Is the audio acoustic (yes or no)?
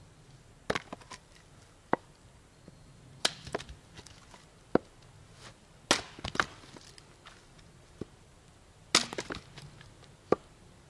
yes